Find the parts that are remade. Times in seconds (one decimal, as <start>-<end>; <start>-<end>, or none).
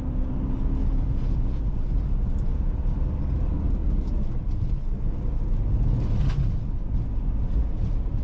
0.8-1.6; 2.5-3.0